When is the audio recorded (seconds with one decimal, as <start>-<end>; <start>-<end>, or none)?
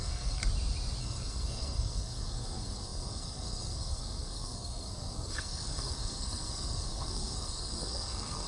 0.4-1.0